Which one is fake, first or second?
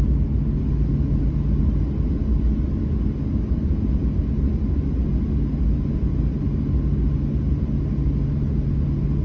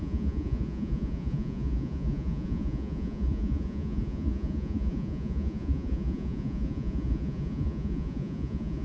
second